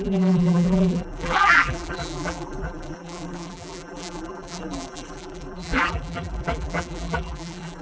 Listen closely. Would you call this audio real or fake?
fake